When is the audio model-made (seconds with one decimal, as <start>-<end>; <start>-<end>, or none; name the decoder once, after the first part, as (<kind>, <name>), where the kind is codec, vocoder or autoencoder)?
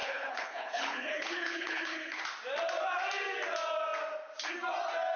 0.0-2.2 (codec, HILCodec)